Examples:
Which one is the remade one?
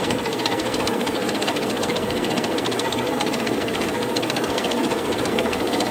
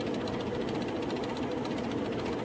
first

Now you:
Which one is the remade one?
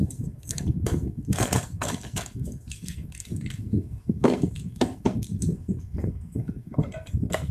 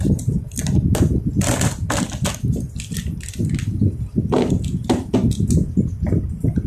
first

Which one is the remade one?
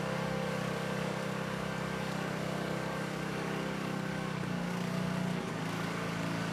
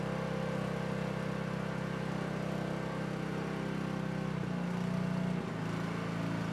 first